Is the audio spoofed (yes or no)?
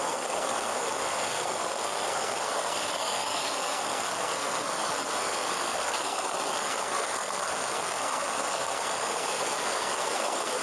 yes